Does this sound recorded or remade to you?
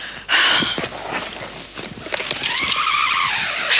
recorded